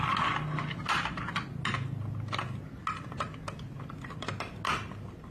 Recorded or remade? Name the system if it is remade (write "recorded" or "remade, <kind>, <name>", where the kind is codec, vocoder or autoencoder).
recorded